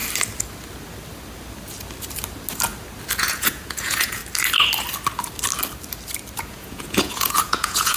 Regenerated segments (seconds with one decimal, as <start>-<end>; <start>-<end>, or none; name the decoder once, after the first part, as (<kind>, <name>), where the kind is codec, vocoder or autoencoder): 3.2-4.2 (vocoder, Vocos); 6.5-8.0